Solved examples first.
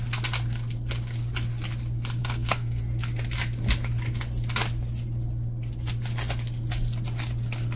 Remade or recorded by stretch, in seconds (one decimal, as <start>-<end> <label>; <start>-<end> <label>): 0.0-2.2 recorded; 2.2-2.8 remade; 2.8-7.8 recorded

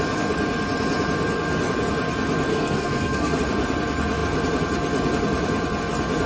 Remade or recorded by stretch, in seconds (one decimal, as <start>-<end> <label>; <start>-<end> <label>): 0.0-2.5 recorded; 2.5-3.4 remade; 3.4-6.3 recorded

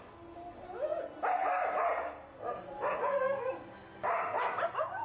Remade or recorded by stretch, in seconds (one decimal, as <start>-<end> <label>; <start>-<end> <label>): 0.0-5.0 recorded

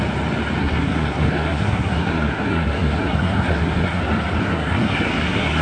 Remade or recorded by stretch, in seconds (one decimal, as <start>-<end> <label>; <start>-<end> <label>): 0.0-0.6 recorded; 0.6-4.0 remade; 4.0-4.4 recorded; 4.4-5.6 remade

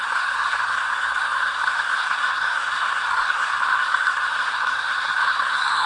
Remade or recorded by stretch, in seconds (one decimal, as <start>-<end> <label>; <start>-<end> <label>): 0.0-5.9 remade